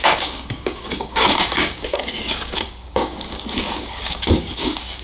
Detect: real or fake fake